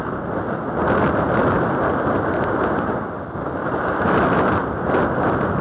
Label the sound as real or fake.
real